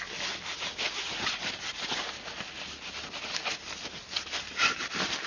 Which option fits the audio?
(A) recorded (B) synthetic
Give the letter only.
A